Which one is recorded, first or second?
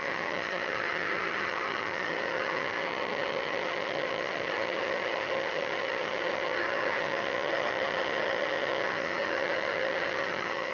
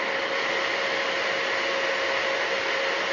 second